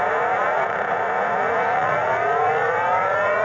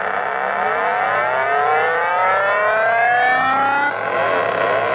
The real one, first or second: second